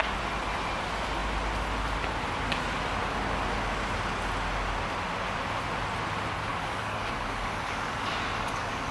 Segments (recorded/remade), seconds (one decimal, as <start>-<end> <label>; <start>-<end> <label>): 0.0-6.5 recorded; 6.5-8.9 remade